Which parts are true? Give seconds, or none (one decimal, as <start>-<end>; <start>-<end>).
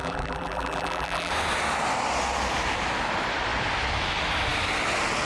1.3-5.3